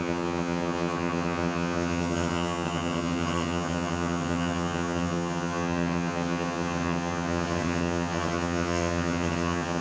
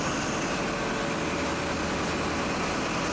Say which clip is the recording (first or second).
second